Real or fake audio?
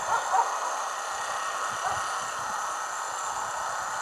real